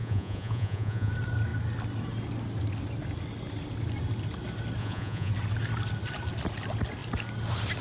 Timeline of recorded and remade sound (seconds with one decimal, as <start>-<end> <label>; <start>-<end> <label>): 0.0-1.1 remade; 1.1-4.8 recorded; 4.8-5.3 remade; 5.3-7.8 recorded